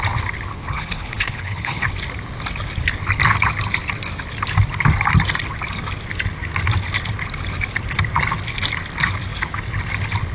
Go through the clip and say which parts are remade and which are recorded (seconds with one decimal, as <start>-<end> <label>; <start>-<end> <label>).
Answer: 0.0-0.5 recorded; 0.5-1.9 remade; 1.9-10.3 recorded